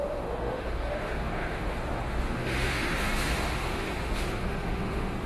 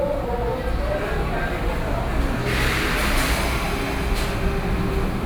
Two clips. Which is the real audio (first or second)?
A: second